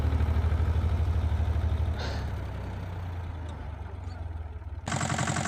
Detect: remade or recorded recorded